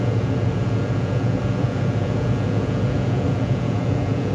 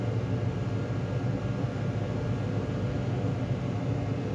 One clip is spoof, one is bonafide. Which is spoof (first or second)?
first